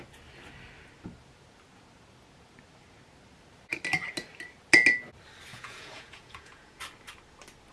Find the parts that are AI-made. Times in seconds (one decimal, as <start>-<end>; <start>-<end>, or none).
5.5-6.8